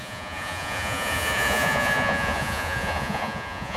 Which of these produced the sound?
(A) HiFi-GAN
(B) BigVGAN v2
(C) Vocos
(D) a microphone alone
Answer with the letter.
C